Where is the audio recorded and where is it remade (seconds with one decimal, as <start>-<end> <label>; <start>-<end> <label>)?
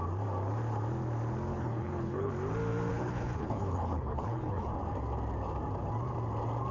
0.0-1.5 recorded; 1.5-2.3 remade; 2.3-2.9 recorded; 2.9-4.7 remade; 4.7-6.7 recorded